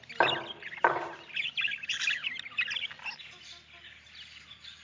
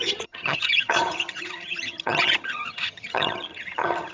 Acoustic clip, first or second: first